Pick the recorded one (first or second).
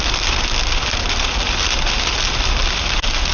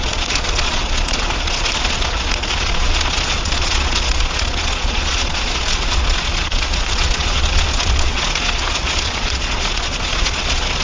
first